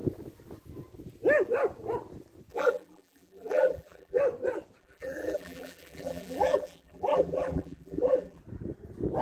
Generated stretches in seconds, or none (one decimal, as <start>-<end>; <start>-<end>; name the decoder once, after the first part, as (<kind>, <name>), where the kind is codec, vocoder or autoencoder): 2.5-4.2 (vocoder, BigVGAN v2); 4.8-8.4